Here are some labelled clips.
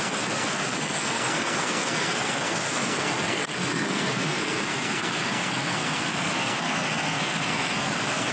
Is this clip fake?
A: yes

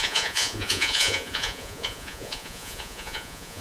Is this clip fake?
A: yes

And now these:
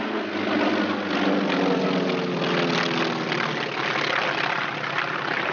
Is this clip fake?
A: no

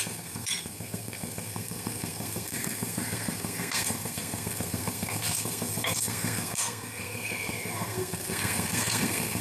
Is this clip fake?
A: yes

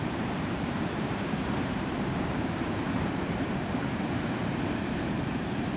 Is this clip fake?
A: yes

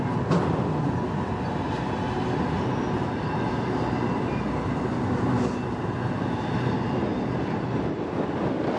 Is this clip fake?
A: no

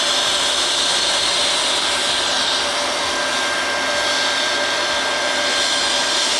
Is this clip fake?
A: no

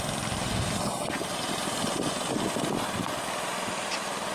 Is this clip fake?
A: no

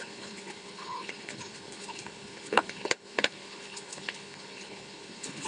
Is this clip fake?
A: yes